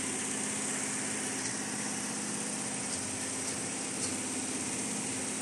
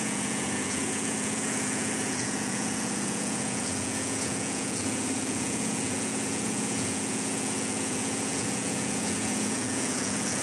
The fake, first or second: second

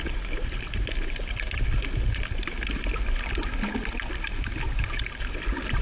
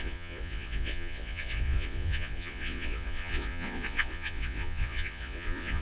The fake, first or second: second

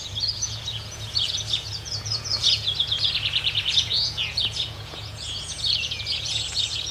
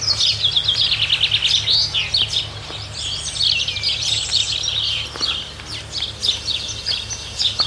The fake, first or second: first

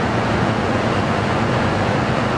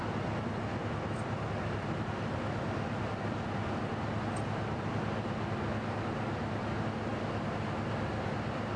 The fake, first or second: first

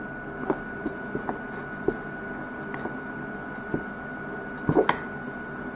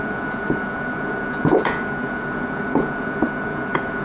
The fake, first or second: second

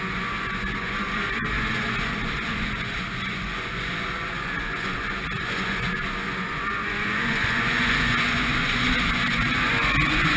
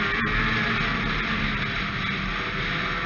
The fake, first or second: first